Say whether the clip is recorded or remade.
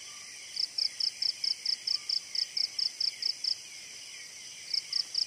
recorded